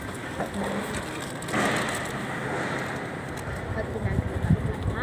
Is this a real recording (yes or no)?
yes